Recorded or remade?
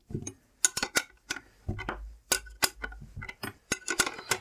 recorded